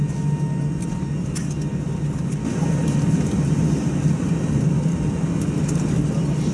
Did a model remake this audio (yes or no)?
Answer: no